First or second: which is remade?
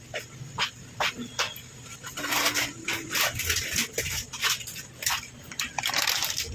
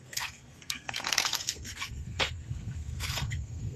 second